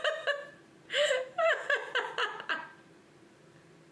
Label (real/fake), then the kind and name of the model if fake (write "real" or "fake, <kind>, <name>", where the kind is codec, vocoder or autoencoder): fake, vocoder, BigVGAN v2